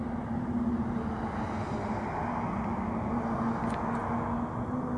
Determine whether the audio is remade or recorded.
recorded